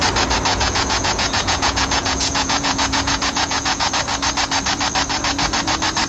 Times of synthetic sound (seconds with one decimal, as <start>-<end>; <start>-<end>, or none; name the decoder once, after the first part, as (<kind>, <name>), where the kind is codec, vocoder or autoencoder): 0.5-3.9 (vocoder, Vocos)